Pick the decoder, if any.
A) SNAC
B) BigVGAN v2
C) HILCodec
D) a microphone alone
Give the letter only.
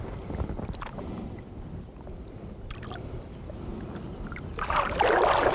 D